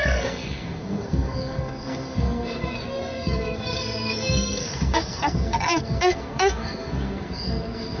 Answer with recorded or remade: remade